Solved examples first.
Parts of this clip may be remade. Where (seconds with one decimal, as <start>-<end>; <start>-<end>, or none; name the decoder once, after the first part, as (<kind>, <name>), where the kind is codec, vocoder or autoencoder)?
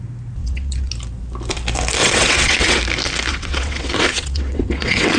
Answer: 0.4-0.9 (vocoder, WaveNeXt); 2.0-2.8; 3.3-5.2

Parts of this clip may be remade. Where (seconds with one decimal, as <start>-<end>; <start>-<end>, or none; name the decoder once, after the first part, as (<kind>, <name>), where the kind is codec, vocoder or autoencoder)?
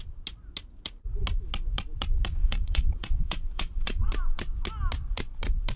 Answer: 2.4-4.1 (vocoder, WaveNeXt)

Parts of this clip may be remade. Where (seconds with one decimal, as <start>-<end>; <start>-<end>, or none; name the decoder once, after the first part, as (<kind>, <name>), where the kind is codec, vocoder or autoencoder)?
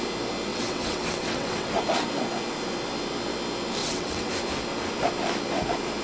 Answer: 0.5-1.8 (vocoder, WaveNeXt); 3.8-4.3